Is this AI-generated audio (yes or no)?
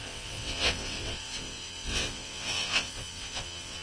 yes